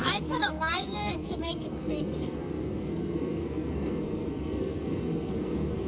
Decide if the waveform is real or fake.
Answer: fake